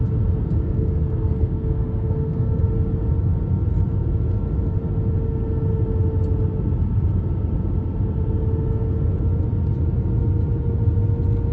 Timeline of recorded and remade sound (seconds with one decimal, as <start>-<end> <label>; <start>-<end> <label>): 0.0-0.4 recorded; 0.4-2.6 remade; 2.6-11.5 recorded